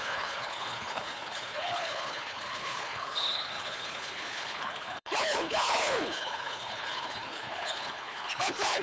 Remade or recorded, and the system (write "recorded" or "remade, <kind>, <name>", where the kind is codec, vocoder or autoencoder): remade, codec, HILCodec